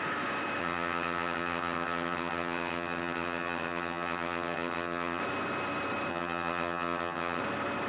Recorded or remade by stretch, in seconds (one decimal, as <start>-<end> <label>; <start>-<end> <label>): 0.0-0.6 recorded; 0.6-5.2 remade; 5.2-6.1 recorded; 6.1-7.4 remade; 7.4-7.9 recorded